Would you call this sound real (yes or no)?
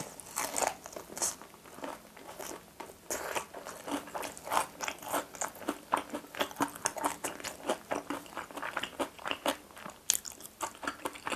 yes